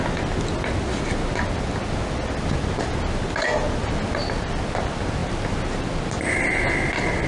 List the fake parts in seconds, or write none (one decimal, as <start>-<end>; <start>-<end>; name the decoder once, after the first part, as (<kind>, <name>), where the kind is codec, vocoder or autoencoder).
none